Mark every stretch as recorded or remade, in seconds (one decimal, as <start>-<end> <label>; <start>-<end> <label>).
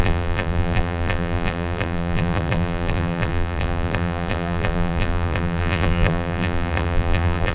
0.0-7.5 remade